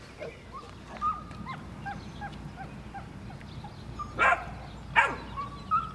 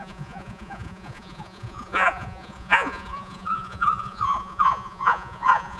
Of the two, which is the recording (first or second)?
first